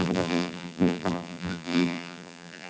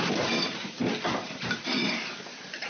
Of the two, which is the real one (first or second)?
second